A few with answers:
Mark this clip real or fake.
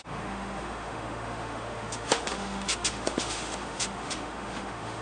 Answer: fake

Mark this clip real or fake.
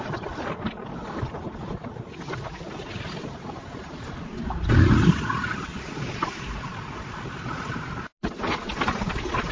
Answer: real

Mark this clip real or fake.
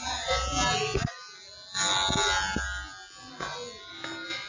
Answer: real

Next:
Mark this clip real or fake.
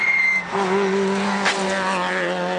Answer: real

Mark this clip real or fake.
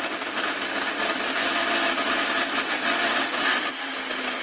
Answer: real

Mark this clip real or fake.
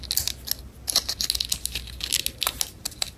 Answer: real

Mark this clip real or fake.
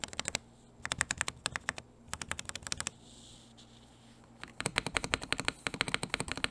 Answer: real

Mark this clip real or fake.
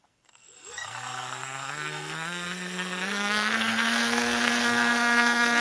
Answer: fake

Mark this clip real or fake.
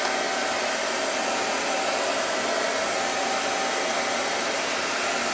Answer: real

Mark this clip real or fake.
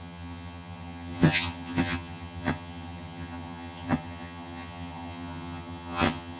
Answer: fake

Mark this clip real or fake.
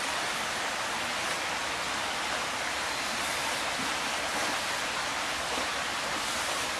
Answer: real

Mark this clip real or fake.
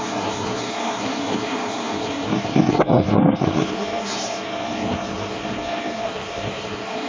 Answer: fake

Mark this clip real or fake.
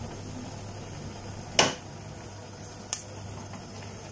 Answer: real